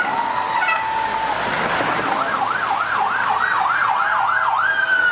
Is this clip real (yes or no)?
yes